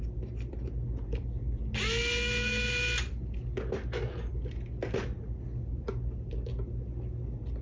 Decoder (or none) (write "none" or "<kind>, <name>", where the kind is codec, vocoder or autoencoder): none